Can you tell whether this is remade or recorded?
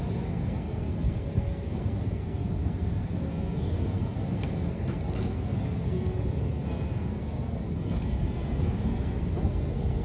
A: remade